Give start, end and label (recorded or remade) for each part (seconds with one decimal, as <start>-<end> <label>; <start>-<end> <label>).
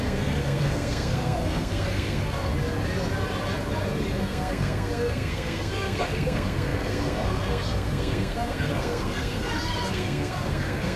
0.0-2.5 remade; 2.5-4.2 recorded; 4.2-11.0 remade